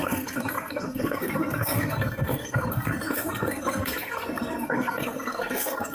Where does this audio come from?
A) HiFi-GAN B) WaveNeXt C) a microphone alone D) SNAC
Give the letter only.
D